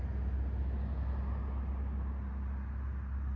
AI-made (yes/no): no